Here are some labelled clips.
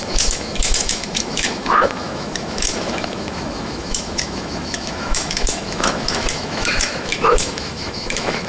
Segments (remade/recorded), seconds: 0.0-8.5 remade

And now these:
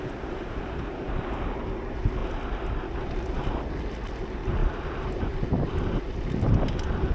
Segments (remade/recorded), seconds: 0.0-4.6 recorded; 4.6-6.0 remade; 6.0-7.1 recorded

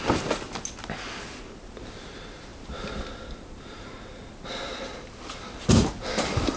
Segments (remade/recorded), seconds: 0.0-6.6 recorded

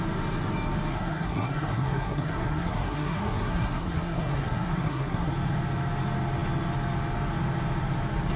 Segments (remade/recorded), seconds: 0.0-0.9 recorded; 0.9-5.3 remade; 5.3-8.4 recorded

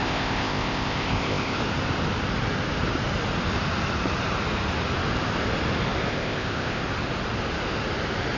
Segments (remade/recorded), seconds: 0.0-1.6 remade; 1.6-6.1 recorded; 6.1-6.8 remade; 6.8-8.4 recorded

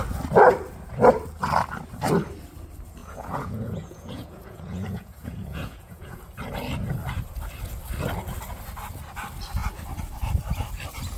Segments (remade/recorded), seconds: 0.0-3.0 recorded; 3.0-6.2 remade; 6.2-11.2 recorded

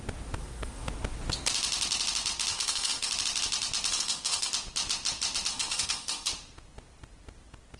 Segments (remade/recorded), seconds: 0.0-0.4 recorded; 0.4-0.9 remade; 0.9-2.5 recorded; 2.5-3.1 remade; 3.1-3.9 recorded; 3.9-4.5 remade; 4.5-5.5 recorded; 5.5-6.3 remade; 6.3-7.8 recorded